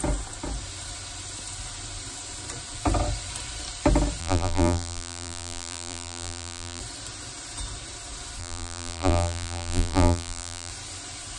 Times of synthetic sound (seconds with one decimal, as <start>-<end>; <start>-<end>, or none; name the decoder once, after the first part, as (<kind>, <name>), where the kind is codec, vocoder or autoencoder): 4.2-6.8 (vocoder, BigVGAN v2); 8.4-10.7